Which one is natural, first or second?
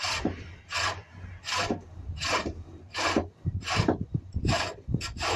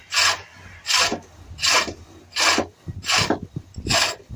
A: second